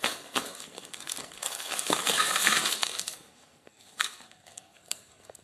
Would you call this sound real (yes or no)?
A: no